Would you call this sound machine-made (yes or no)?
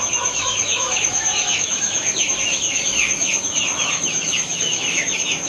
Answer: yes